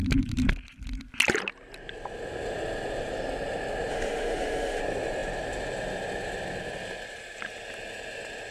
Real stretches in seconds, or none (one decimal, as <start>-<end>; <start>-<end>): 0.0-3.9; 4.8-8.5